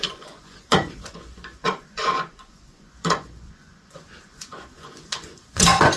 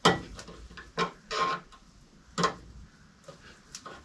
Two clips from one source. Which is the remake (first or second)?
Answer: first